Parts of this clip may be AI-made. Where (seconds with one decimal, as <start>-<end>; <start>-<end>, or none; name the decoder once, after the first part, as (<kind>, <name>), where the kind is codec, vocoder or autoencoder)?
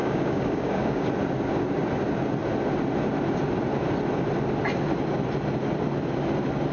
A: 0.0-1.1 (codec, DAC)